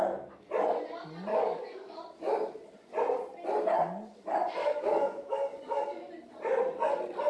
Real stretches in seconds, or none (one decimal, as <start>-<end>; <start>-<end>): 0.0-1.3; 2.0-4.6; 6.1-7.3